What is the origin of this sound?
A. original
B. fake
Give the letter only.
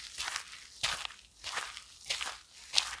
A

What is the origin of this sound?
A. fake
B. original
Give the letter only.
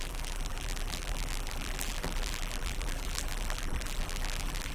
A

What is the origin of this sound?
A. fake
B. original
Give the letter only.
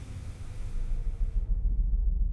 B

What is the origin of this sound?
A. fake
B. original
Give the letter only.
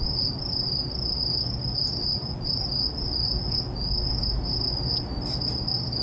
B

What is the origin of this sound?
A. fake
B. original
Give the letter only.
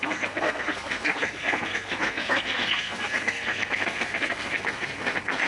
A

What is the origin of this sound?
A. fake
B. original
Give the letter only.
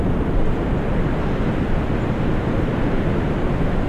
B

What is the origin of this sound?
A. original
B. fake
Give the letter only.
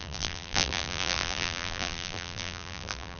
B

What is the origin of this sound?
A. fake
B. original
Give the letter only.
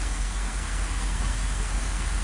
A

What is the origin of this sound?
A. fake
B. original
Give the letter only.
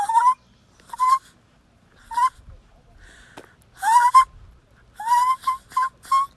B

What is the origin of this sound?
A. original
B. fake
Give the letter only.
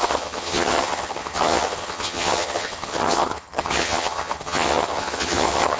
B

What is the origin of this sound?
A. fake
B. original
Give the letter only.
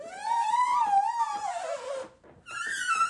B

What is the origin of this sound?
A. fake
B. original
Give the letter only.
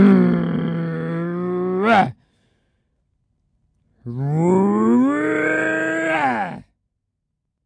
B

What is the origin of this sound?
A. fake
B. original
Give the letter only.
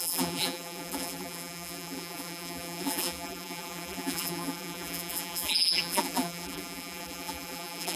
A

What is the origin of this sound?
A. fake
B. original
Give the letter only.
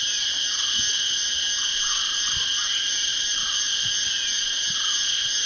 B